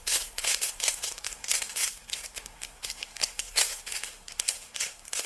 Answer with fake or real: fake